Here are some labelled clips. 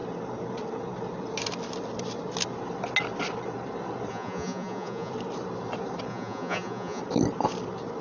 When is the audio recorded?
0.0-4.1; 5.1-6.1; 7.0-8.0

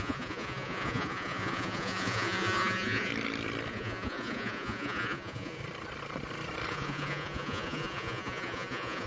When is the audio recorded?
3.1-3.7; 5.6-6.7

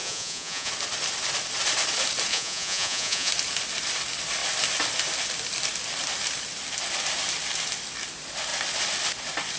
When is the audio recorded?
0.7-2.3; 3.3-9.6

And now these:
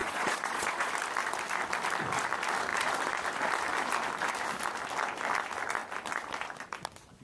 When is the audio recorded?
0.9-7.2

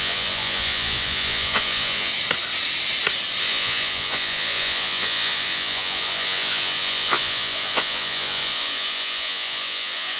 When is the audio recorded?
2.1-3.4